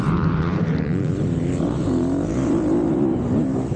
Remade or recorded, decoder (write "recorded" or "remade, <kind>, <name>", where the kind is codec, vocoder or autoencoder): remade, vocoder, BigVGAN v2